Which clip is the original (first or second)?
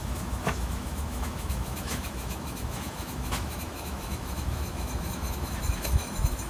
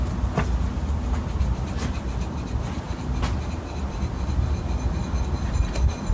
second